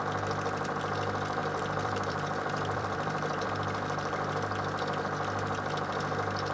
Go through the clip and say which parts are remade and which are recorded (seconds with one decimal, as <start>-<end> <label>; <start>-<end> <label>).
0.0-1.4 recorded; 1.4-3.5 remade; 3.5-6.5 recorded